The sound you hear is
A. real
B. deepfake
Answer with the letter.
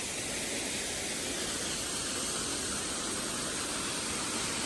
A